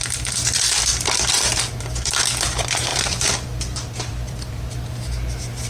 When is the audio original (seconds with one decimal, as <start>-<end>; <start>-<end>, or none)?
0.0-0.9; 2.1-2.9; 4.7-5.7